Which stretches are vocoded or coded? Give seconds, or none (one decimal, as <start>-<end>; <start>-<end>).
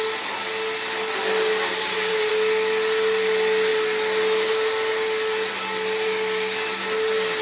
1.7-2.3